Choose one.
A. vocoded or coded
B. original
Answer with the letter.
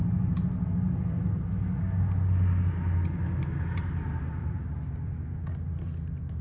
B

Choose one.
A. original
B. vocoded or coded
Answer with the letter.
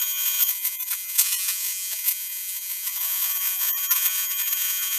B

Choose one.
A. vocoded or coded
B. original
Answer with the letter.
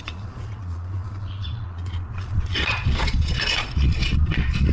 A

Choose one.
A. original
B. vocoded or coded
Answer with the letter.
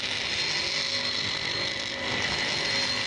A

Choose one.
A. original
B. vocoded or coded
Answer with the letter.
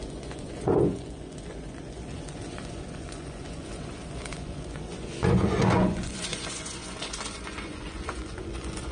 B